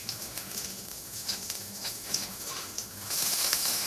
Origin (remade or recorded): remade